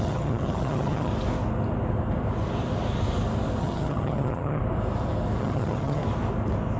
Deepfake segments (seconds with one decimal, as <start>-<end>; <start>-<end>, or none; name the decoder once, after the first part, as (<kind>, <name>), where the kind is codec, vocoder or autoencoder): 0.0-1.1 (vocoder, HiFi-GAN); 3.6-4.6; 5.4-6.0